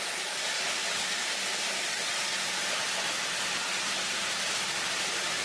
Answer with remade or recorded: recorded